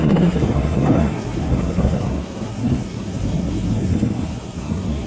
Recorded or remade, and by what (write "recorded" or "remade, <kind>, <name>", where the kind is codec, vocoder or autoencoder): remade, codec, SNAC